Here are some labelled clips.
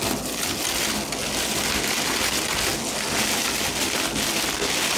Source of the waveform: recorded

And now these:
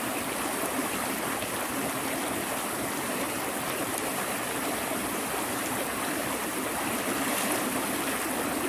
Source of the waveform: recorded